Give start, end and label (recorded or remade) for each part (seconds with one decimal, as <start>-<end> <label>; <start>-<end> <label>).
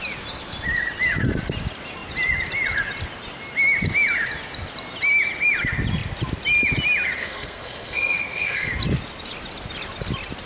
0.0-7.2 recorded; 7.2-8.7 remade; 8.7-10.5 recorded